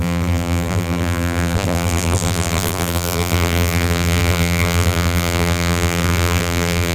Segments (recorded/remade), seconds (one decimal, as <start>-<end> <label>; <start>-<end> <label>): 0.0-6.9 remade